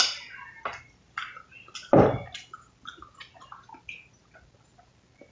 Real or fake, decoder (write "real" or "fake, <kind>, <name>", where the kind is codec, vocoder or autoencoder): real